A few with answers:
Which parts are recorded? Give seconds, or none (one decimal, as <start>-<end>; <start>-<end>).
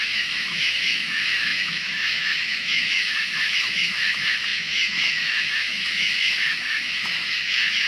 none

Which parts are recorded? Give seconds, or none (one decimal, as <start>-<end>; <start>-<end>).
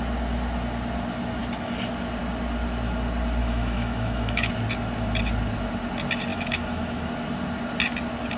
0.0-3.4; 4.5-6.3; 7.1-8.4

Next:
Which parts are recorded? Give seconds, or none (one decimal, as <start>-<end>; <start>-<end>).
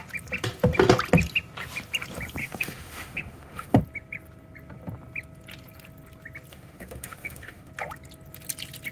0.0-2.4; 3.8-6.5; 7.7-8.9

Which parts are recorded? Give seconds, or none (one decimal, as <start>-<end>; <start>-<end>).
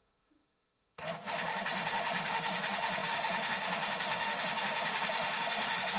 none